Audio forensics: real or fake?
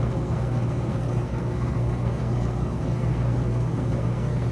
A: fake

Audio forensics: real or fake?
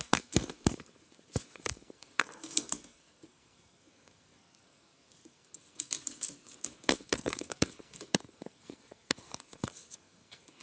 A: fake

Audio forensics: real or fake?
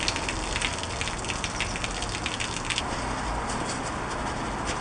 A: real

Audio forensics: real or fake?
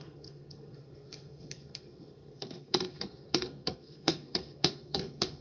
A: fake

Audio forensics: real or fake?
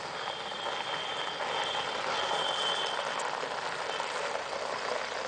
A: real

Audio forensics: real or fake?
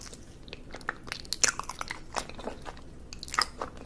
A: real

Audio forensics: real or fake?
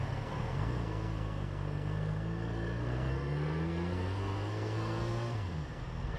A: fake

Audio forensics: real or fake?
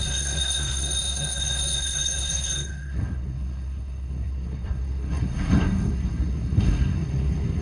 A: fake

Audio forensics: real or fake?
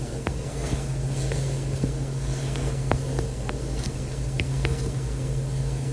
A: fake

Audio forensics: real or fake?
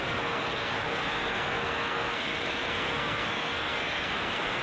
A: fake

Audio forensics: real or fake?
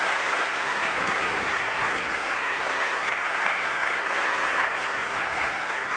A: fake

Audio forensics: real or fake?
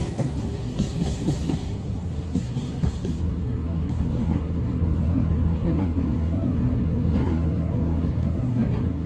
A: fake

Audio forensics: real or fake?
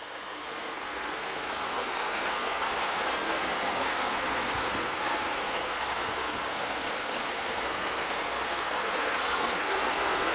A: fake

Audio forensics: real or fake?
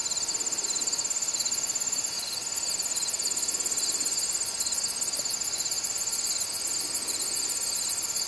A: real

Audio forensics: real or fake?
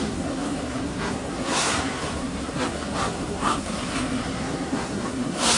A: fake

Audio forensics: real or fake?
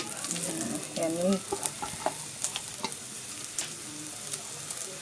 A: real